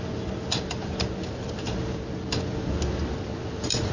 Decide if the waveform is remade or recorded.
recorded